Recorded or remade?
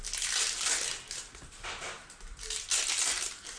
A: recorded